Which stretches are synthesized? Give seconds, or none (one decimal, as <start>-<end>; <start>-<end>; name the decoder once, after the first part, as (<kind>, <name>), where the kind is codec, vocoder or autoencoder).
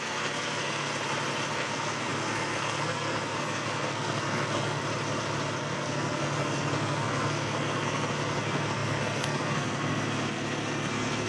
0.0-0.9 (codec, SNAC); 1.5-4.8; 5.6-11.3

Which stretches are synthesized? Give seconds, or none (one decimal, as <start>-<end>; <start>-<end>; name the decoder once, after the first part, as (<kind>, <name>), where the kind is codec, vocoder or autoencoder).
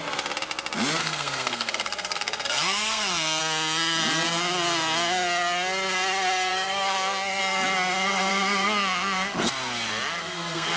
1.0-3.4 (codec, SNAC); 6.5-7.4; 8.3-9.5; 10.2-10.8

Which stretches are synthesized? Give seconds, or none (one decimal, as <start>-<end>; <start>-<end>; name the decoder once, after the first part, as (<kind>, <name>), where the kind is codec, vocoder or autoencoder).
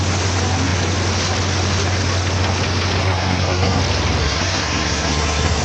3.0-3.8 (codec, SNAC); 4.2-5.6